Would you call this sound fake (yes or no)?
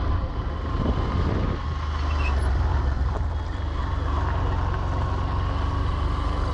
no